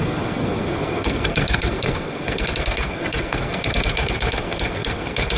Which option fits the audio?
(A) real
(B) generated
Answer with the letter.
B